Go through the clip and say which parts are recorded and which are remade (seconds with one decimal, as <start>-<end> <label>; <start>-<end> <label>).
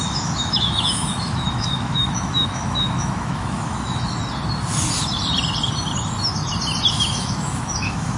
0.0-4.2 remade; 4.2-6.9 recorded; 6.9-8.2 remade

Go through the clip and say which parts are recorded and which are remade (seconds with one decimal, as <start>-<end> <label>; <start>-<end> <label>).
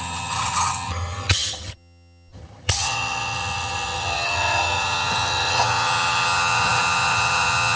0.0-7.8 remade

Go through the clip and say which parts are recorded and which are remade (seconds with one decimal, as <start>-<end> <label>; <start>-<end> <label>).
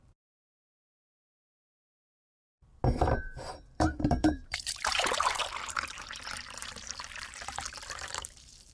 0.0-2.7 remade; 2.7-3.2 recorded; 3.2-8.7 remade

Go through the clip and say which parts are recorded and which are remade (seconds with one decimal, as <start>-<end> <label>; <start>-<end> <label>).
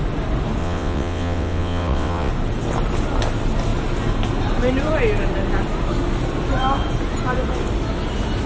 0.0-0.6 recorded; 0.6-2.3 remade; 2.3-8.5 recorded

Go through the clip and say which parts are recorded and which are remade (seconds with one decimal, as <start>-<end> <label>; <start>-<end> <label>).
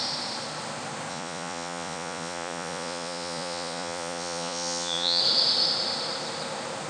0.0-1.1 recorded; 1.1-5.2 remade; 5.2-6.9 recorded